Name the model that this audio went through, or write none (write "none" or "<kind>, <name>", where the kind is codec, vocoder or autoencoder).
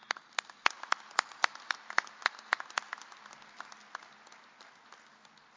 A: none